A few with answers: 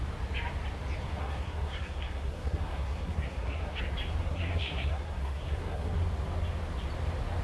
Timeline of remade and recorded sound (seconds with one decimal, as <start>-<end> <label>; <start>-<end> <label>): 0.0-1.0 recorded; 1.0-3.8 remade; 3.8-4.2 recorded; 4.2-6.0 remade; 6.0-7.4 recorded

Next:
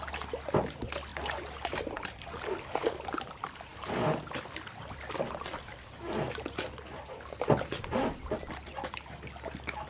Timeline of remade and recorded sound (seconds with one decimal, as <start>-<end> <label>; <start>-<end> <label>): 0.0-9.9 recorded

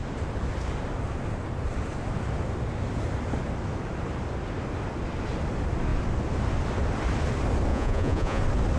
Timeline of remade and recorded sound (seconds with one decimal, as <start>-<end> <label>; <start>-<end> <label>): 0.0-7.7 recorded; 7.7-8.4 remade; 8.4-8.8 recorded